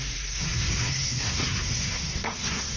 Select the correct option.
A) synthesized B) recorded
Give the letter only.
A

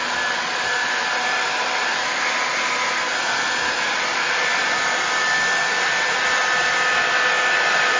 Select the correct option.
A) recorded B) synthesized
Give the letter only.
A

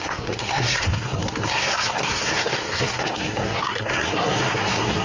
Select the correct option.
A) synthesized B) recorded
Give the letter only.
A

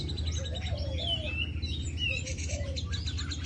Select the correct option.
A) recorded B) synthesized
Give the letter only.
A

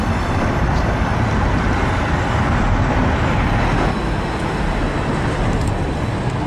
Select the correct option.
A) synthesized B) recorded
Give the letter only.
B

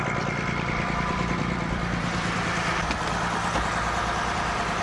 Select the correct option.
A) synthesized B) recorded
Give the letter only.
A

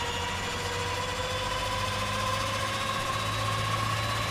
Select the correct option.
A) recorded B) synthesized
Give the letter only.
A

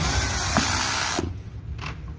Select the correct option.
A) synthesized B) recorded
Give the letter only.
B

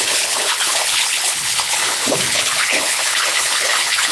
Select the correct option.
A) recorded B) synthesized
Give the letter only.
B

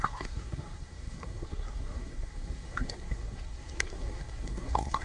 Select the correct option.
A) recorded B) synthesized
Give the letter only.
B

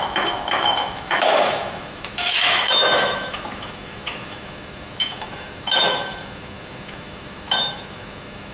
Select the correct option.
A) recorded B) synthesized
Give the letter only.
B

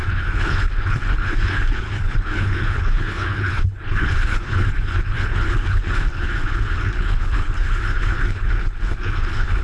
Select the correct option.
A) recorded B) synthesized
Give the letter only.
B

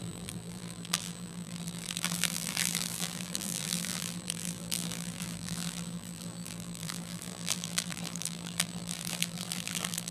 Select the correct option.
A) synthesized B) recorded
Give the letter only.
A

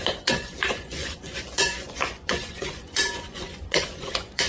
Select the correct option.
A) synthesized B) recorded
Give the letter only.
A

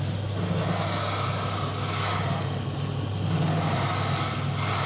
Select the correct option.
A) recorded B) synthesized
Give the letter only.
A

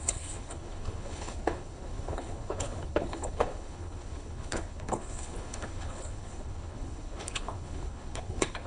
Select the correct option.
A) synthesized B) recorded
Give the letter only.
A